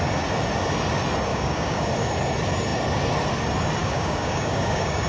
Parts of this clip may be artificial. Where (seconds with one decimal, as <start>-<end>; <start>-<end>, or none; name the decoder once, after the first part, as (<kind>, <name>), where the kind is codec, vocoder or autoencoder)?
1.3-1.9 (codec, DAC); 3.8-5.1